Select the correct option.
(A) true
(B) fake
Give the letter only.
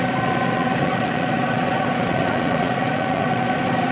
B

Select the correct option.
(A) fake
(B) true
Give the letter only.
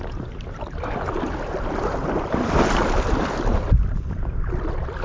B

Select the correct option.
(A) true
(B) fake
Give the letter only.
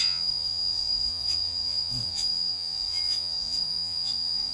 B